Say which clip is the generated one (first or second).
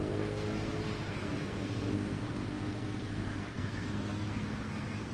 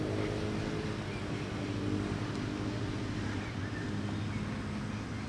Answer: first